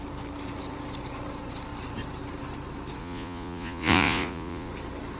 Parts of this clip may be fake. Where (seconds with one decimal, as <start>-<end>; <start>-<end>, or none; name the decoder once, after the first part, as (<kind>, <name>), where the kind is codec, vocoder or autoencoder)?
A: 3.0-4.7 (vocoder, Vocos)